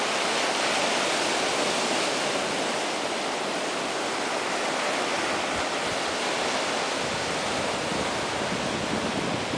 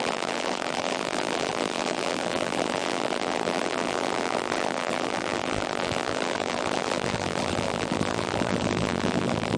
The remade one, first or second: second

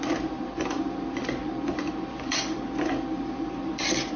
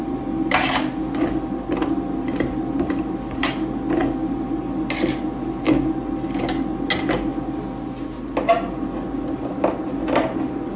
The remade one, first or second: first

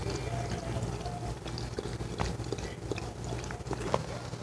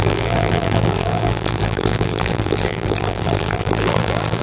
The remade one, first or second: second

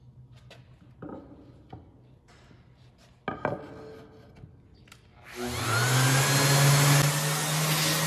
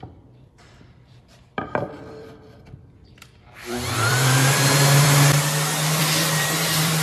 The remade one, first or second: second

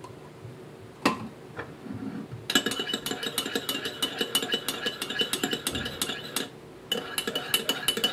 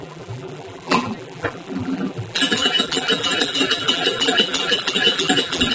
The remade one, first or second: second